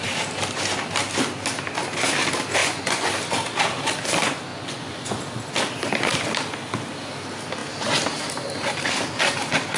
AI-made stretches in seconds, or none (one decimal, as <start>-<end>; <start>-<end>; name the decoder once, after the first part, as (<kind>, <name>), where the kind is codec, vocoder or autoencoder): 2.6-3.1 (vocoder, Vocos); 4.5-5.2